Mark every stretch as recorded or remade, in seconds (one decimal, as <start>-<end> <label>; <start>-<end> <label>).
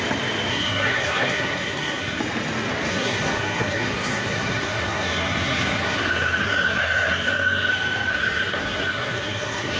0.0-0.5 recorded; 0.5-2.2 remade; 2.2-2.9 recorded; 2.9-7.7 remade; 7.7-8.1 recorded; 8.1-9.8 remade